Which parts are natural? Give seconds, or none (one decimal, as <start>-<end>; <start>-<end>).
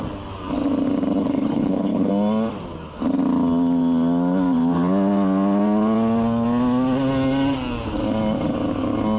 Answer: 0.0-1.2; 2.1-9.2